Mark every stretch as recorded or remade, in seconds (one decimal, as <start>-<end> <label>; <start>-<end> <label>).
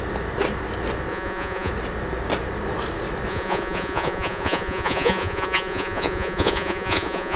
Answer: 0.0-1.1 recorded; 1.1-1.7 remade; 1.7-3.3 recorded; 3.3-7.4 remade